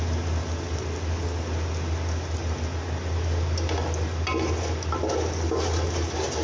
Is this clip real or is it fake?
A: real